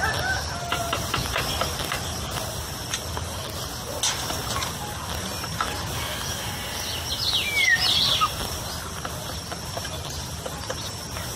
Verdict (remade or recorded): recorded